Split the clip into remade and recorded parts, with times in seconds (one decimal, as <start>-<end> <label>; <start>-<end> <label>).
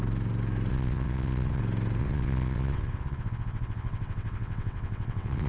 0.0-0.7 recorded; 0.7-1.6 remade; 1.6-2.0 recorded; 2.0-5.5 remade